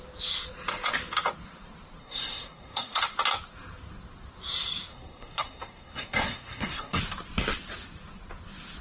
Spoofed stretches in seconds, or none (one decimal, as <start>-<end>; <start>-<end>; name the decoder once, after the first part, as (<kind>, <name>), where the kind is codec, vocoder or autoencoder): 2.0-3.0 (codec, SNAC); 4.9-7.0